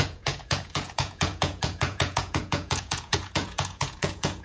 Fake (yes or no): yes